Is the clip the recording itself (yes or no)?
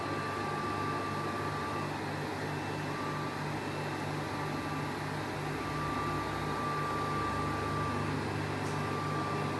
yes